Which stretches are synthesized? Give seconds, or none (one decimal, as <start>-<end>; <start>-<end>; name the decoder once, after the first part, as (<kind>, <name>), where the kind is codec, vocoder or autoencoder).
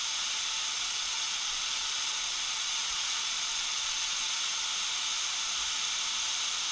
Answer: 1.0-4.4 (vocoder, Vocos)